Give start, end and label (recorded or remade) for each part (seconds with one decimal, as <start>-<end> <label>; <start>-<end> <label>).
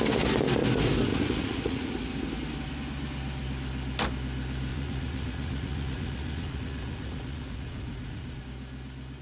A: 0.0-1.1 recorded; 1.1-1.9 remade; 1.9-4.7 recorded; 4.7-8.4 remade; 8.4-9.2 recorded